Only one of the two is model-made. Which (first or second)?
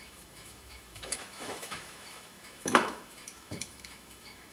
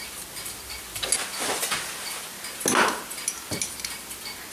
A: first